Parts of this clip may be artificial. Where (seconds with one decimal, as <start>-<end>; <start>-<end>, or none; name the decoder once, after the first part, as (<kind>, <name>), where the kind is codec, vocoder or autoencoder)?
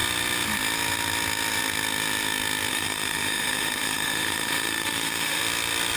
2.7-5.4 (autoencoder, DAC-VAE)